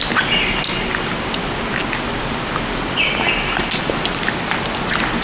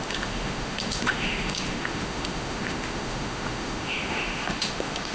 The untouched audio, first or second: first